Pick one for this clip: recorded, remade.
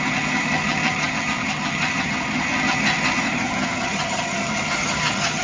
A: remade